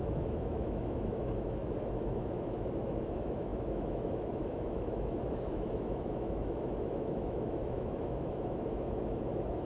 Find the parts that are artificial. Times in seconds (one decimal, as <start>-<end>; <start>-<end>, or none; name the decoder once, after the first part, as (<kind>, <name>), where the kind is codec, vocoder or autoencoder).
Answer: 0.0-9.7 (autoencoder, DAC-VAE)